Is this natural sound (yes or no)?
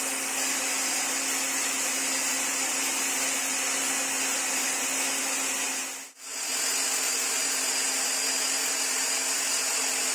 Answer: yes